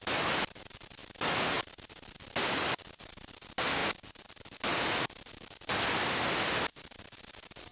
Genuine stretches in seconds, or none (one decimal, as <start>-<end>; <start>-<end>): 0.0-7.7